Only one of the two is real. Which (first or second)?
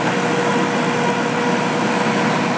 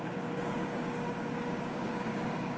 first